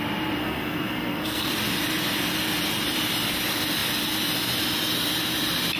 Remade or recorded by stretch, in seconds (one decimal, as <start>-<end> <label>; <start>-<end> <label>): 0.0-0.4 recorded; 0.4-1.5 remade; 1.5-5.8 recorded